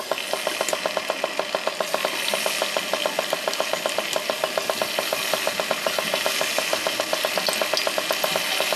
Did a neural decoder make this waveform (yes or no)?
no